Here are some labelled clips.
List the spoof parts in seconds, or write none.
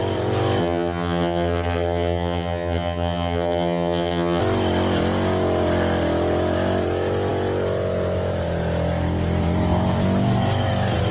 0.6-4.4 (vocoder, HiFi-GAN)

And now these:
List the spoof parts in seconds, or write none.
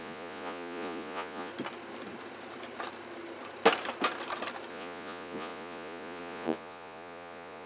0.0-1.5 (vocoder, Vocos); 4.7-7.7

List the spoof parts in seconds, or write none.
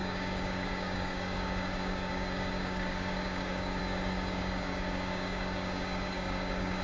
0.0-6.8 (codec, DAC)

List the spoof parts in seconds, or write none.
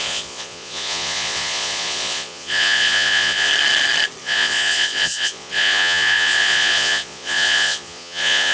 0.0-3.5 (vocoder, Vocos); 4.2-8.5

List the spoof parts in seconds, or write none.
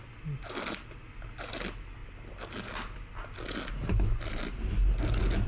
none